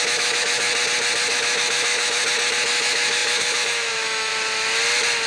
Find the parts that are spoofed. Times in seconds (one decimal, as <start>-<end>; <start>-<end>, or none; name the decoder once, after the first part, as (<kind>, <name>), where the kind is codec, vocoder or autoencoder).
0.0-0.7 (autoencoder, DAC-VAE); 1.3-2.2; 2.8-4.3

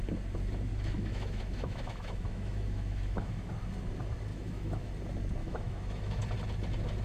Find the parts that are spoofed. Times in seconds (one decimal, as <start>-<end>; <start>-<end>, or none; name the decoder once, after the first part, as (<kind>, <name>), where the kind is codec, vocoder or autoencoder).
0.7-3.5 (autoencoder, DAC-VAE); 4.3-4.9; 5.4-6.2

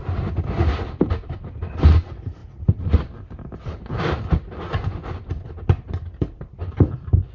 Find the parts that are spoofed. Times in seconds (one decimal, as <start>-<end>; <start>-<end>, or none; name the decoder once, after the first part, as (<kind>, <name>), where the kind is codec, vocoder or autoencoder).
2.4-4.0 (vocoder, BigVGAN v2)